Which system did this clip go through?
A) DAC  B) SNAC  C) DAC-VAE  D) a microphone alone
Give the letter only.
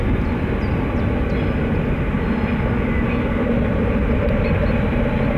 D